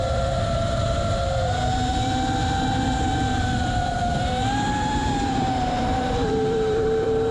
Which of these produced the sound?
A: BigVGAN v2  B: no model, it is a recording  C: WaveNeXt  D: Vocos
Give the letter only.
A